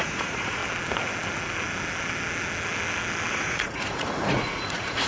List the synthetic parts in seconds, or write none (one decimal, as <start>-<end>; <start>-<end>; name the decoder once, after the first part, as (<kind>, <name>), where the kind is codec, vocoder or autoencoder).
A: 0.0-0.6 (vocoder, Vocos); 3.3-5.1